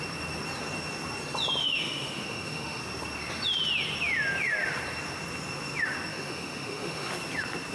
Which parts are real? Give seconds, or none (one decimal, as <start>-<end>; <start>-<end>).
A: 0.0-1.6; 2.8-6.1; 7.1-7.7